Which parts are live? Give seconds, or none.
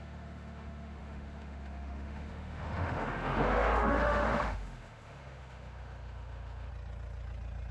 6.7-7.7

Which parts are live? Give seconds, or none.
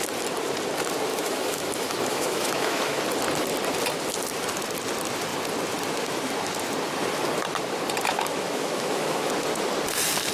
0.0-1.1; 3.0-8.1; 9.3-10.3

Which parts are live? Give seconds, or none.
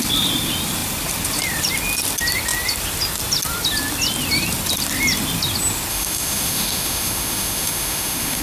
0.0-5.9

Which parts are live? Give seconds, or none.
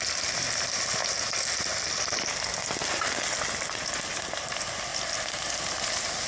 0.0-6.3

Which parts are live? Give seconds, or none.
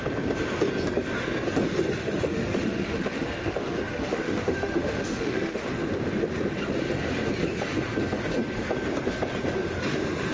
0.0-2.0; 5.7-10.3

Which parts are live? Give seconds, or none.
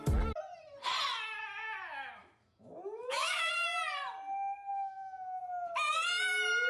0.0-2.2; 3.5-4.7; 5.4-6.7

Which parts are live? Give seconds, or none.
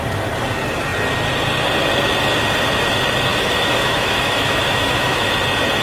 0.0-3.3; 5.3-5.8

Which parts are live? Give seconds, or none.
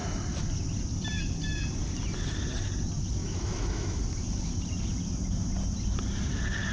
0.0-3.2; 4.0-6.7